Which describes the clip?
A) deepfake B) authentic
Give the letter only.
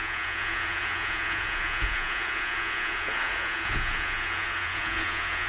A